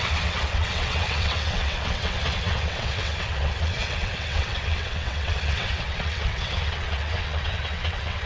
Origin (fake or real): fake